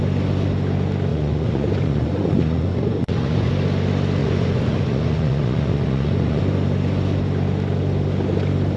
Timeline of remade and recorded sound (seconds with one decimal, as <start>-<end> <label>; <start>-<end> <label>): 0.0-1.1 recorded; 1.1-3.5 remade; 3.5-4.2 recorded; 4.2-6.4 remade; 6.4-8.8 recorded